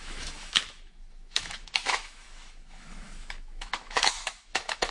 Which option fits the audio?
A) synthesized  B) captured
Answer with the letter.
A